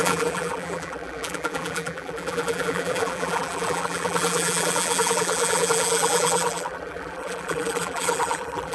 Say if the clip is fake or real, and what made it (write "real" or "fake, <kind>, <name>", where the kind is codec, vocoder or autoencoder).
fake, vocoder, BigVGAN v2